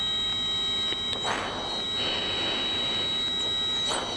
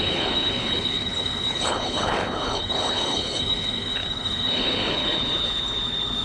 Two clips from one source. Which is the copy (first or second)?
second